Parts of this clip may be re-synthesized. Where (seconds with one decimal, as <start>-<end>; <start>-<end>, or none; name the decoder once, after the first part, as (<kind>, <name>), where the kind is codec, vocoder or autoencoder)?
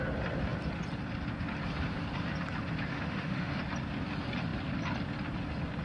2.9-3.6 (autoencoder, DAC-VAE)